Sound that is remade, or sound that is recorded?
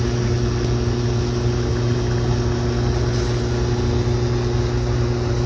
recorded